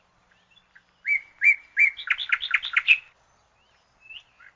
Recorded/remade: recorded